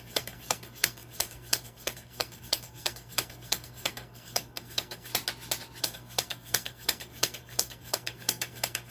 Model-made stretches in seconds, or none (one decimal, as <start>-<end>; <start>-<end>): 0.0-5.1; 5.8-8.9